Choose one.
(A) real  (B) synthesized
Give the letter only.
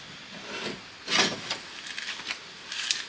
A